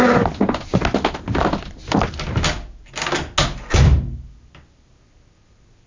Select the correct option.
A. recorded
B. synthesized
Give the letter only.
A